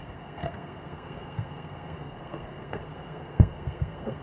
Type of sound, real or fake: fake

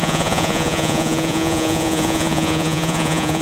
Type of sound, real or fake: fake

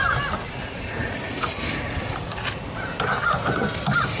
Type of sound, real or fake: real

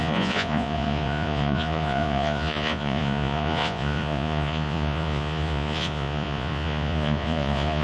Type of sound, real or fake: fake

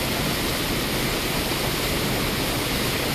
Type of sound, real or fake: real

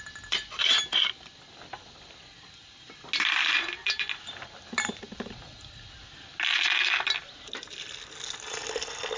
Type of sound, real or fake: real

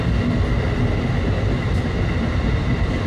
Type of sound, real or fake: real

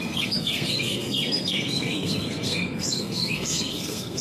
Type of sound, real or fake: fake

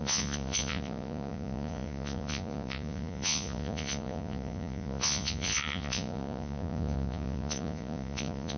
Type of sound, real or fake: fake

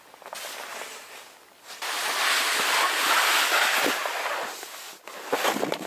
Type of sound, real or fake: real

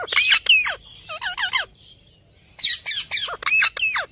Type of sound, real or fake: real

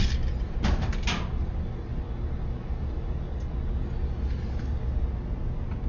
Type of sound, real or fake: real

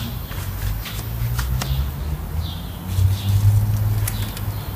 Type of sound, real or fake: real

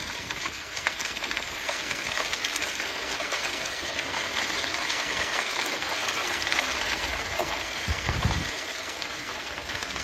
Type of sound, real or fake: fake